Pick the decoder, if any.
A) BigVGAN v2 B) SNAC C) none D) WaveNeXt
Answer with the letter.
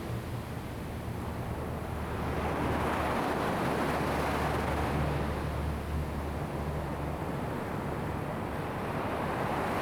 C